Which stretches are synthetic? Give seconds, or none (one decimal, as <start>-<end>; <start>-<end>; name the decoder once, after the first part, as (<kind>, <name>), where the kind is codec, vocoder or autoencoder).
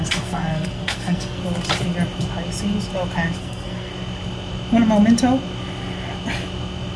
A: 0.0-1.4 (codec, SNAC); 3.4-3.9